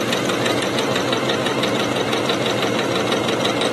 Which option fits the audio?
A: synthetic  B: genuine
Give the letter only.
B